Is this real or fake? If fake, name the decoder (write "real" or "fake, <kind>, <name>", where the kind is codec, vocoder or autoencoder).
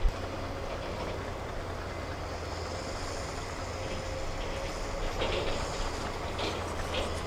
real